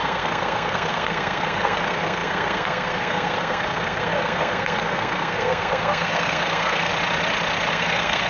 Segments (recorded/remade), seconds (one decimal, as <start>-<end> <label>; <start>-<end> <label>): 0.0-6.9 remade; 6.9-7.7 recorded; 7.7-8.3 remade